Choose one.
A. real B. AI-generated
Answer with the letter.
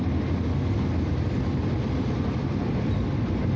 A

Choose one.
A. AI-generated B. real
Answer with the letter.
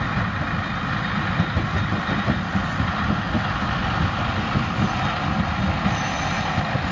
B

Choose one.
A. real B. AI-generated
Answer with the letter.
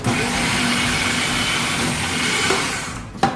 A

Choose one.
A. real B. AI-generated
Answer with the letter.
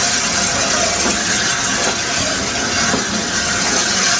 A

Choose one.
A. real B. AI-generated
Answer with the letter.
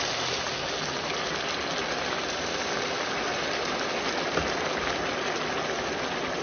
A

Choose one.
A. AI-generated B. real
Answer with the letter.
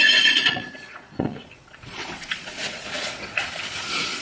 A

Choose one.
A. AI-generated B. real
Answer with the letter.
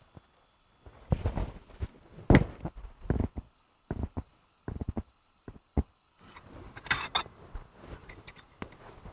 B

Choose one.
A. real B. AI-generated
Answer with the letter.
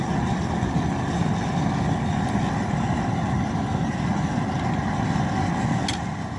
A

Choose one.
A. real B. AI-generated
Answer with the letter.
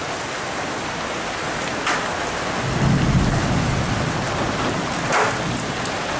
A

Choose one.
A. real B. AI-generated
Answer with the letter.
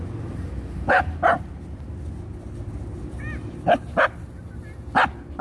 A